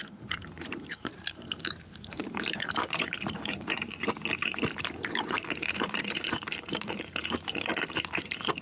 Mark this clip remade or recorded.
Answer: remade